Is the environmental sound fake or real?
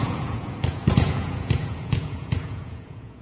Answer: fake